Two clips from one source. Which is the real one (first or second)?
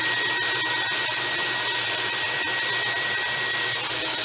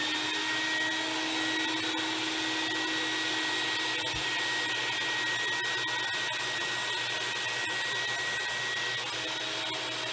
second